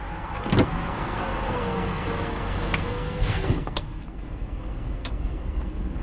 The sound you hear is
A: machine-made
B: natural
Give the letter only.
A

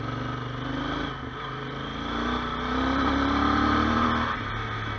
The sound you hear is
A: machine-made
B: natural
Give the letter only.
B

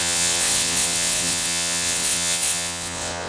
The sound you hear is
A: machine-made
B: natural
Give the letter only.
A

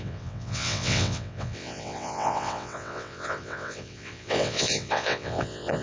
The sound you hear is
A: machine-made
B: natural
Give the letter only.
A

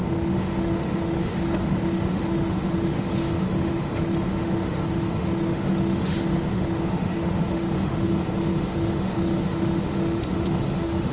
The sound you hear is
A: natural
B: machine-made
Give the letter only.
B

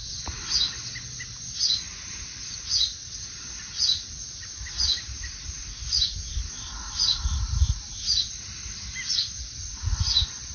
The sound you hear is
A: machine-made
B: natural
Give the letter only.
B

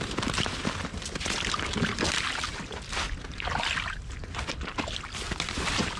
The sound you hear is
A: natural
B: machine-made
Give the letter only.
A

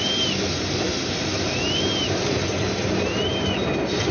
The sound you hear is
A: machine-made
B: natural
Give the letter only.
B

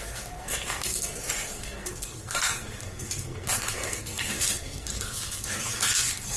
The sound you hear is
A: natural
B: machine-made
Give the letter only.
B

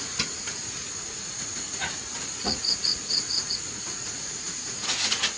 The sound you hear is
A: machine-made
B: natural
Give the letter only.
A